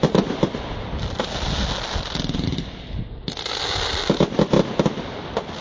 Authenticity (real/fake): real